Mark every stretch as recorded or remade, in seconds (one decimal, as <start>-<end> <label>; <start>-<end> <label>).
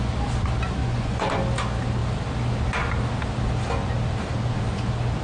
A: 0.0-0.8 recorded; 0.8-1.4 remade; 1.4-5.2 recorded